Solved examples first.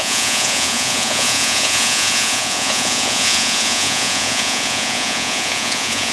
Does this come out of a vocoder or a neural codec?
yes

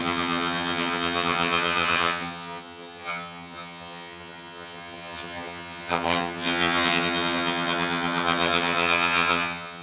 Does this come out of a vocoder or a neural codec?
yes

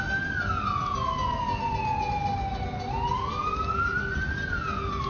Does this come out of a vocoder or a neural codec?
no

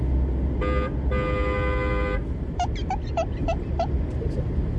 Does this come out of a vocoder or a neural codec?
no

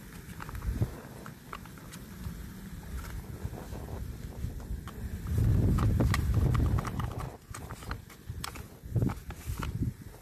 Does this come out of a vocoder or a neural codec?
no